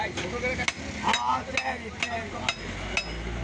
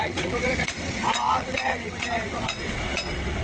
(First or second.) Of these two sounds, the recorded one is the first